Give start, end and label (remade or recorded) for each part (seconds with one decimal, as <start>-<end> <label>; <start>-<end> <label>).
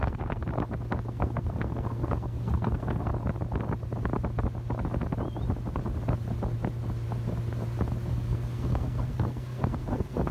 0.0-0.4 remade; 0.4-1.1 recorded; 1.1-3.1 remade; 3.1-8.1 recorded; 8.1-10.3 remade